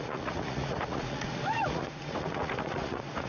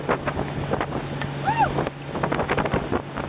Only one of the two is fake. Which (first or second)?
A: first